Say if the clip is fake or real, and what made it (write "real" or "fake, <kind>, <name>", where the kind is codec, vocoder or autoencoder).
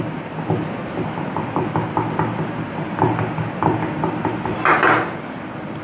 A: real